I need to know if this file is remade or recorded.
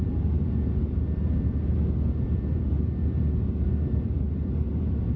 remade